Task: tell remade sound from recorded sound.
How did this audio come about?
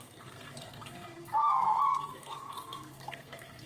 remade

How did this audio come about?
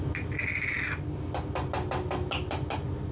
recorded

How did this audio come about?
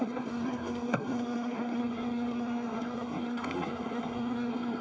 remade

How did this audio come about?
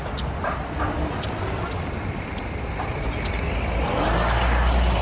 recorded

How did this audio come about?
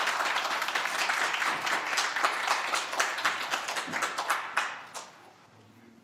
recorded